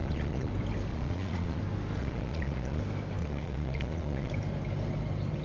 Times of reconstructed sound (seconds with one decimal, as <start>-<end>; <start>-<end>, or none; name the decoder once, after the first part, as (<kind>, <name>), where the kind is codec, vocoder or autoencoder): 0.0-0.5 (vocoder, Vocos); 0.9-1.6; 2.0-2.8; 3.2-4.3